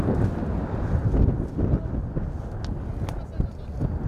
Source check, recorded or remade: recorded